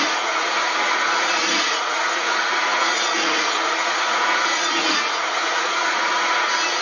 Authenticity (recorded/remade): remade